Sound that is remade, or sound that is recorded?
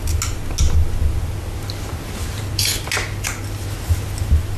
recorded